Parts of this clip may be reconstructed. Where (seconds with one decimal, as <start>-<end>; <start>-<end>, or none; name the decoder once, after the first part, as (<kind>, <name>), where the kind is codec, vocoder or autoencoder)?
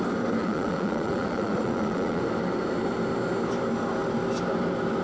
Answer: 0.4-2.2 (vocoder, Vocos)